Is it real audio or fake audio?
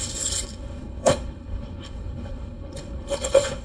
fake